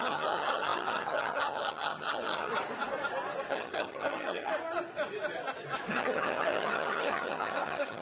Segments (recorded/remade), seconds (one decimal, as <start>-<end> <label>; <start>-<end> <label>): 0.0-2.5 remade; 2.5-3.5 recorded; 3.5-4.5 remade; 4.5-5.9 recorded; 5.9-8.0 remade